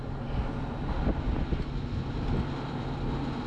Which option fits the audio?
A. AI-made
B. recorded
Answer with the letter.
B